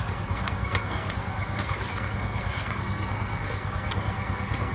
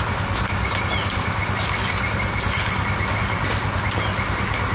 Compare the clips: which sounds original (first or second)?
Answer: second